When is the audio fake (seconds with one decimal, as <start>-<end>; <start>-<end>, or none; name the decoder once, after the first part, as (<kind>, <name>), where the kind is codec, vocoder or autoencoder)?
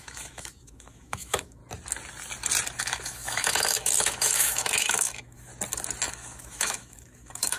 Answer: 0.0-1.6 (autoencoder, DAC-VAE); 2.8-5.5; 6.1-7.6